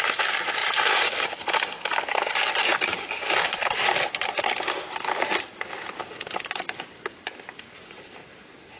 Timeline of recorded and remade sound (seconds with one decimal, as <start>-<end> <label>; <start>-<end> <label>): 0.0-0.6 recorded; 0.6-1.3 remade; 1.3-8.8 recorded